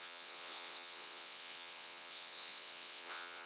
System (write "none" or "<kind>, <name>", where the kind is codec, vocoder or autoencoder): vocoder, WaveNeXt